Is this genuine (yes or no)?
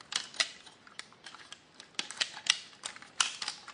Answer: yes